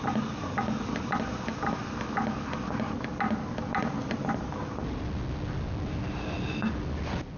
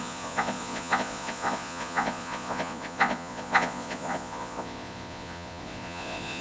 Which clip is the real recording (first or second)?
first